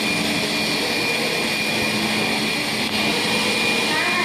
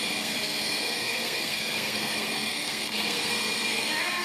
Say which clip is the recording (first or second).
first